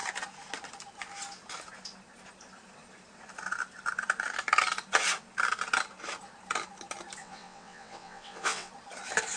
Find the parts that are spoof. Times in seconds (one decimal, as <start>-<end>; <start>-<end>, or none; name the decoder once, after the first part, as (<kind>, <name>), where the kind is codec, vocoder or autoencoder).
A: 7.2-8.7 (vocoder, WaveNeXt)